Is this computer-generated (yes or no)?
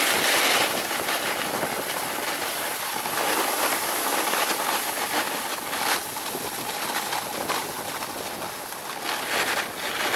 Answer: no